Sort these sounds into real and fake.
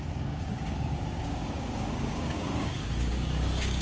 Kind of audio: fake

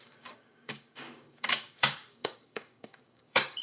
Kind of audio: fake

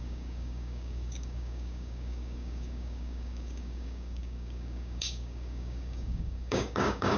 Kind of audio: fake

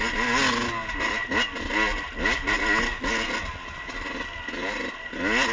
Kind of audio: real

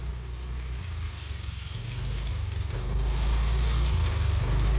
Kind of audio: fake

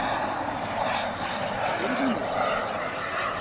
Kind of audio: real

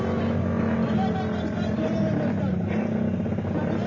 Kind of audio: real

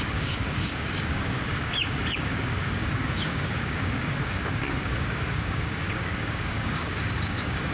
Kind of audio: fake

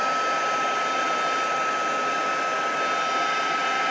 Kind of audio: real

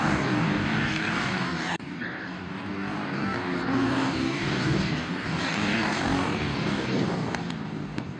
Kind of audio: fake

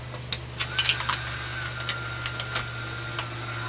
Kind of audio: real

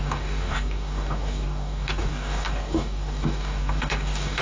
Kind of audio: fake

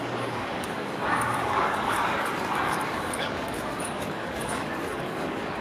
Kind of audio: fake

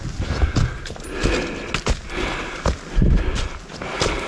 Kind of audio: real